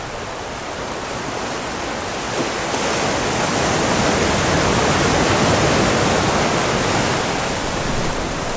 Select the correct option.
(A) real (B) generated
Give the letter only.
A